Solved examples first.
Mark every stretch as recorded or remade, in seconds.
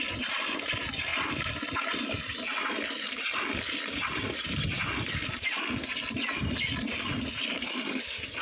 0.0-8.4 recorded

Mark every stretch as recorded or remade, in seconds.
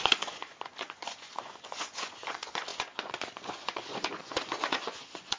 0.0-5.4 remade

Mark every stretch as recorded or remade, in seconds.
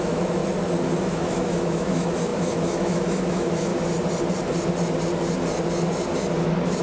0.0-0.4 remade; 0.4-1.0 recorded; 1.0-3.7 remade; 3.7-6.8 recorded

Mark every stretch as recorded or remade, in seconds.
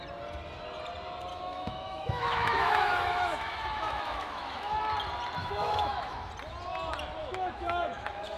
0.0-1.3 recorded; 1.3-4.8 remade; 4.8-5.4 recorded; 5.4-6.3 remade; 6.3-7.2 recorded; 7.2-8.4 remade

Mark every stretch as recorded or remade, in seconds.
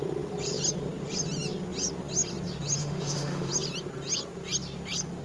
0.0-2.8 recorded; 2.8-3.5 remade; 3.5-5.2 recorded